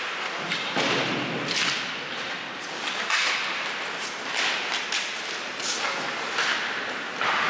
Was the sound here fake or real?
real